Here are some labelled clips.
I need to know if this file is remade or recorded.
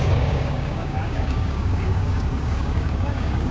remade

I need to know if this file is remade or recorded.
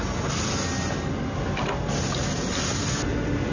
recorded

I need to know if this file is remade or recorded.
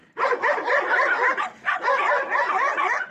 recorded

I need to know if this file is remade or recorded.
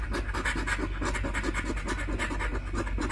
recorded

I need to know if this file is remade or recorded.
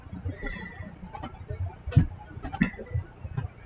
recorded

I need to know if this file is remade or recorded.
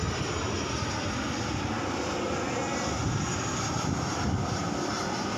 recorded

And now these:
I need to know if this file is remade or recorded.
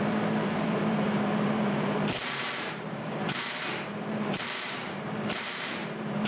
remade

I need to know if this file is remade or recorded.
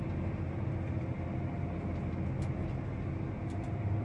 recorded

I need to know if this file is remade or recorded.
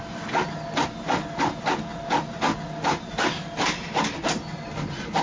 recorded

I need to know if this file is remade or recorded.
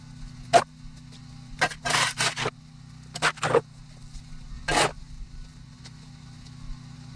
recorded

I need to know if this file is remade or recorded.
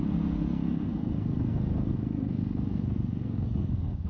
remade